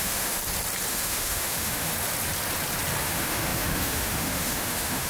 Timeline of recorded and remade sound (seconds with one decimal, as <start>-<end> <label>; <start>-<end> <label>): 0.0-0.4 remade; 0.4-0.9 recorded; 0.9-1.9 remade; 1.9-3.0 recorded; 3.0-5.1 remade